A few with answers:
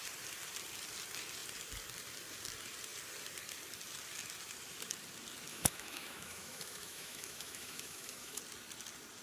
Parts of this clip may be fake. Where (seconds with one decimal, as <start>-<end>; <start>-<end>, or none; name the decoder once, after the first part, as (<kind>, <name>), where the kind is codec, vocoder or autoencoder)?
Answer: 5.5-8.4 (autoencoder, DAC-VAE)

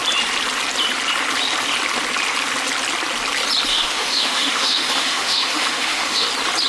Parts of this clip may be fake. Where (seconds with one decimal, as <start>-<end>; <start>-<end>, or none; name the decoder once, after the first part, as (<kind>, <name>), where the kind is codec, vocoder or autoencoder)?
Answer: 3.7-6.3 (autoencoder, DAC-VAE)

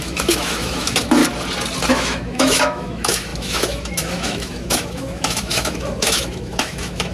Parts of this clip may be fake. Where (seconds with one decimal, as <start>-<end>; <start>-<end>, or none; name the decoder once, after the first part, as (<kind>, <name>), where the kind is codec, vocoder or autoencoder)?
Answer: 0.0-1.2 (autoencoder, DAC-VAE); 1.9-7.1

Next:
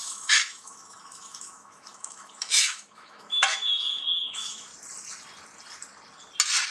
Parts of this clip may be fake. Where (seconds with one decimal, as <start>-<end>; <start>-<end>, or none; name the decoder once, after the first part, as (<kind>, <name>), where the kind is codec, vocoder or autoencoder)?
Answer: 0.0-4.7 (autoencoder, DAC-VAE)

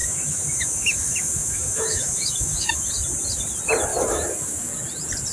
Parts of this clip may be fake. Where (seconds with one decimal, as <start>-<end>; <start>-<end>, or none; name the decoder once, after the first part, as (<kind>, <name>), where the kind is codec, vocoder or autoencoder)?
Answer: 0.0-2.9 (autoencoder, DAC-VAE); 3.9-4.7

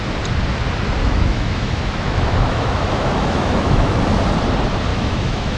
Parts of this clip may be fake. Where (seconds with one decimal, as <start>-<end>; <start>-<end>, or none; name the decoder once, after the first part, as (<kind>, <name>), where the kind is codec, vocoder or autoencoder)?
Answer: 1.0-4.0 (autoencoder, DAC-VAE); 4.9-5.6

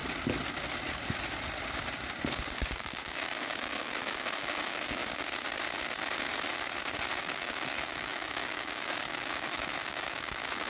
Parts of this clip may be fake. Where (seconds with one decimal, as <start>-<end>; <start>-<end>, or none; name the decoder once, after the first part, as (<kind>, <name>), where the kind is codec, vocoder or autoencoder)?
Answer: 2.7-5.0 (autoencoder, DAC-VAE); 7.2-10.7

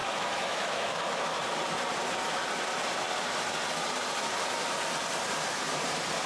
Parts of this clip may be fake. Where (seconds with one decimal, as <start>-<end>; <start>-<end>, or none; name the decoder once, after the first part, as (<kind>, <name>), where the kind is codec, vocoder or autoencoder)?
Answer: 0.0-1.4 (autoencoder, DAC-VAE)